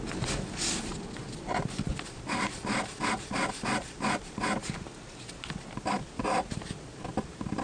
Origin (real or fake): real